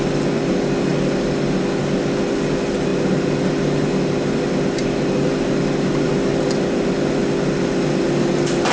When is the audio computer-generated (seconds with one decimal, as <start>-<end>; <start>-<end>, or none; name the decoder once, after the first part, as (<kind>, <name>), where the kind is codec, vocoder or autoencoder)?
none